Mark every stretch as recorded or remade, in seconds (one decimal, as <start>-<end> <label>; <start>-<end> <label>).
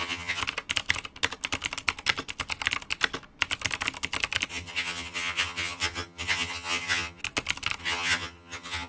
0.0-0.4 remade; 0.4-4.5 recorded; 4.5-7.2 remade; 7.2-7.8 recorded; 7.8-8.9 remade